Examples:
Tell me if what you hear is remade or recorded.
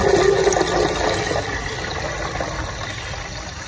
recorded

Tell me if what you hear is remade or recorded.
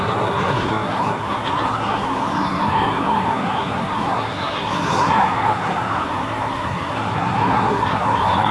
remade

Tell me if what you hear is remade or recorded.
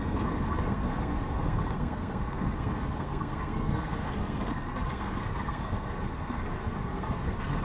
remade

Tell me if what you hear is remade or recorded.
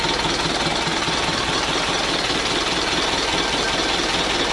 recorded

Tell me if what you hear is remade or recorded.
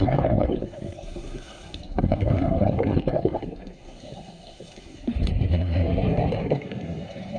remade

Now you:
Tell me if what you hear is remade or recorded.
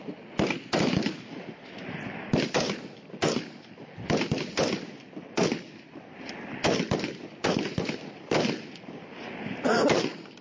recorded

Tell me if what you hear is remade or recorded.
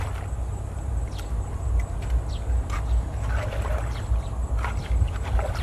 recorded